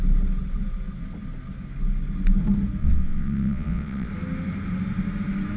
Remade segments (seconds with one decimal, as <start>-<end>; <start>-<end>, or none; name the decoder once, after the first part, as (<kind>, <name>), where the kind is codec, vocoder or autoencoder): 2.8-4.1 (vocoder, WaveNeXt)